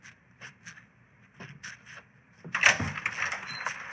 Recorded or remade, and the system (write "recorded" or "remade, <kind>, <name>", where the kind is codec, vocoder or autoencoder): remade, vocoder, BigVGAN v2